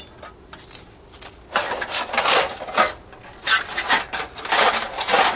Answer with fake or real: real